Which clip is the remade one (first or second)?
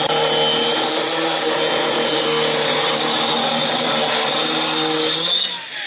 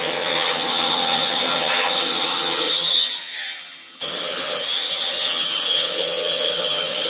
second